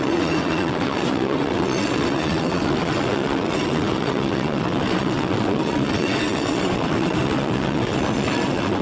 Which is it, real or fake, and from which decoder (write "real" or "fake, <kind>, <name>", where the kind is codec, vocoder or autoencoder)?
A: fake, vocoder, WaveNeXt